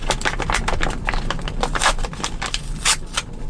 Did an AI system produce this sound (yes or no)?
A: yes